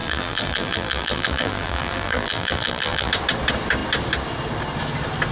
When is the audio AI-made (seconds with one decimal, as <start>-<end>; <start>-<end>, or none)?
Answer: 0.0-3.1